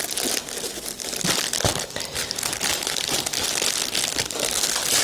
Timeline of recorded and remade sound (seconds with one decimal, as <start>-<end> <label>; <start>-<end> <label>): 0.0-5.0 recorded